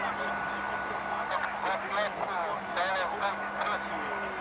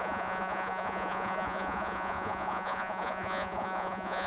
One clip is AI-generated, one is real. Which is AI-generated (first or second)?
second